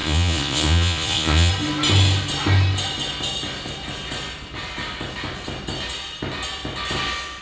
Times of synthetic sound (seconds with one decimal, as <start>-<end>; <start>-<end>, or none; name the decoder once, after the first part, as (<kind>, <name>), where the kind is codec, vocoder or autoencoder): 0.0-1.5 (vocoder, Vocos)